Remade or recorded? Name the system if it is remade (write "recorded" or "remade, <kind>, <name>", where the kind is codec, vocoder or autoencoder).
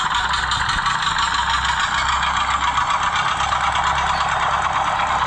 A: recorded